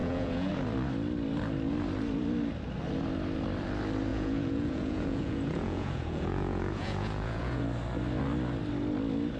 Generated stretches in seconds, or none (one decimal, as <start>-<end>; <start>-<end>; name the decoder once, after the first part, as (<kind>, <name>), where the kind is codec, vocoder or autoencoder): 0.0-0.5 (vocoder, Vocos); 4.1-7.6